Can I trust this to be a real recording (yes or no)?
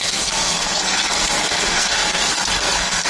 no